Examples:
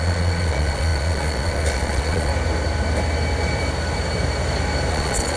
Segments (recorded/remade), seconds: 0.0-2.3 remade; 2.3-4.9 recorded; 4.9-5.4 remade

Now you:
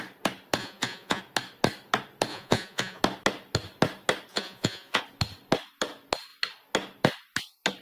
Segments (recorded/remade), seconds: 0.0-0.6 recorded; 0.6-1.2 remade; 1.2-2.3 recorded; 2.3-3.0 remade; 3.0-4.3 recorded; 4.3-5.0 remade; 5.0-7.8 recorded

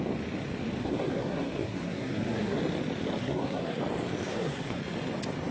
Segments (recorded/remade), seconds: 0.0-0.8 recorded; 0.8-2.6 remade; 2.6-3.2 recorded; 3.2-3.8 remade; 3.8-4.3 recorded; 4.3-4.8 remade; 4.8-5.5 recorded

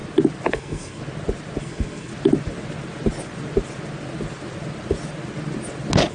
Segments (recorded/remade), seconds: 0.0-0.5 recorded; 0.5-1.0 remade; 1.0-1.6 recorded; 1.6-2.1 remade; 2.1-6.1 recorded

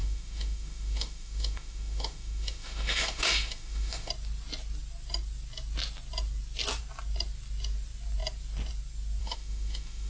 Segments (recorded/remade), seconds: 0.0-4.1 remade; 4.1-9.2 recorded; 9.2-10.1 remade

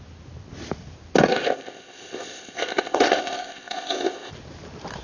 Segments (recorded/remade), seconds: 0.0-1.3 recorded; 1.3-4.3 remade; 4.3-5.0 recorded

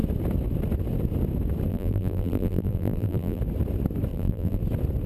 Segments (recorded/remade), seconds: 0.0-1.7 recorded; 1.7-3.4 remade; 3.4-4.1 recorded; 4.1-4.6 remade; 4.6-5.1 recorded

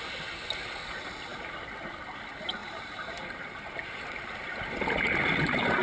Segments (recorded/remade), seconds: 0.0-2.6 recorded; 2.6-4.6 remade; 4.6-5.8 recorded